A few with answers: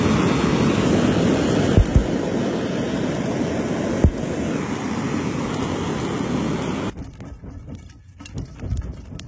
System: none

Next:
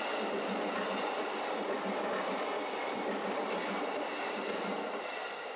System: none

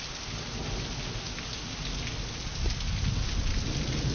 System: none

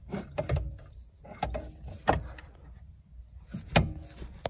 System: none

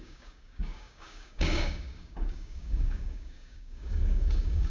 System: codec, DAC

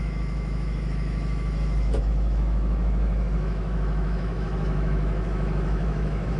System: autoencoder, DAC-VAE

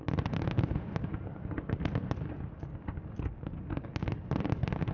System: none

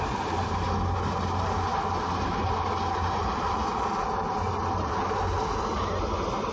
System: none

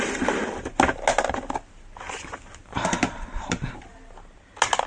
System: none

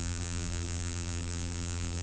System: vocoder, BigVGAN v2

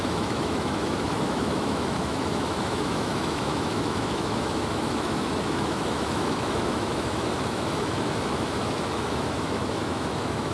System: autoencoder, DAC-VAE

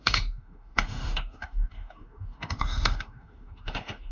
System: autoencoder, DAC-VAE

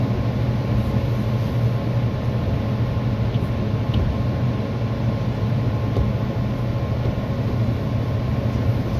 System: none